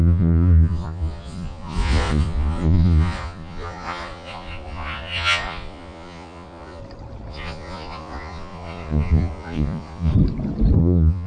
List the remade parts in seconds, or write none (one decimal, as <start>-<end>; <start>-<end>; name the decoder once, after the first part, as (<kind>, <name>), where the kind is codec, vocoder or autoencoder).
0.0-6.8 (vocoder, Vocos); 7.3-10.1; 10.8-11.3